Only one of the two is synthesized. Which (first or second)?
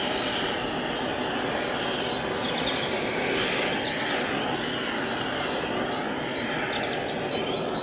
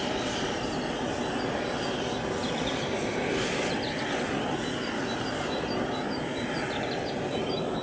second